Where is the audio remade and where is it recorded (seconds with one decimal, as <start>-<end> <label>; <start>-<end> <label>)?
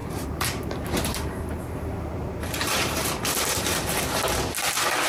0.0-0.7 remade; 0.7-1.1 recorded; 1.1-4.2 remade; 4.2-5.1 recorded